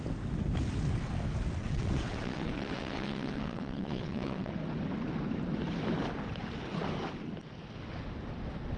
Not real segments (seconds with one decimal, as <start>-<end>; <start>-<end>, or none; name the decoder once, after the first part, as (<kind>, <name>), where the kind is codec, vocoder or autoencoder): 1.6-4.5 (vocoder, WaveNeXt)